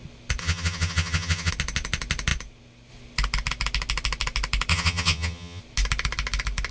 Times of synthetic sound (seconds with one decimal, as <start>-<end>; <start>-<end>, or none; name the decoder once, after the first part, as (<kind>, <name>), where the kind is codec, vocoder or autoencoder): 0.4-1.5 (vocoder, HiFi-GAN); 4.7-5.6